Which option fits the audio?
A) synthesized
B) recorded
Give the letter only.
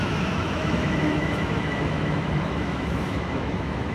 A